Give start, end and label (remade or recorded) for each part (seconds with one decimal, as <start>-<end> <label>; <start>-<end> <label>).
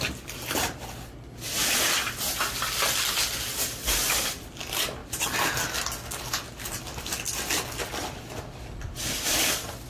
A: 0.0-9.9 recorded